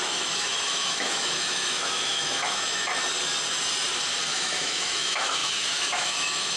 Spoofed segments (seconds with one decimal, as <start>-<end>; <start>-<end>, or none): 0.0-3.0; 4.3-6.6